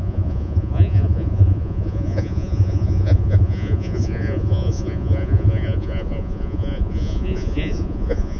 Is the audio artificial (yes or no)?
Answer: yes